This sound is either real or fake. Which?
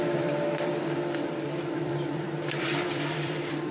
fake